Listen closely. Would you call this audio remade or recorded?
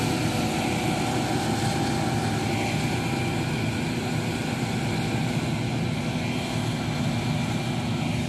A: recorded